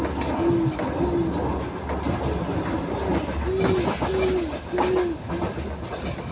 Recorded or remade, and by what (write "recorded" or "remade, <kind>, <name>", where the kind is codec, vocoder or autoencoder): recorded